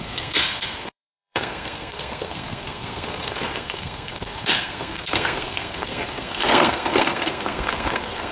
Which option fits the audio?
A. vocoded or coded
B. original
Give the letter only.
A